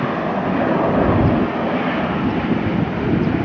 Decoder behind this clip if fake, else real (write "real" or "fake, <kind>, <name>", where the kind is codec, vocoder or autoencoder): real